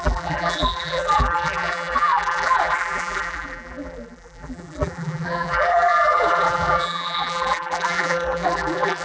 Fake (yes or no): yes